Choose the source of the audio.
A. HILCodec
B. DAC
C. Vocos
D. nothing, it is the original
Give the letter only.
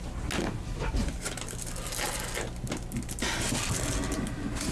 D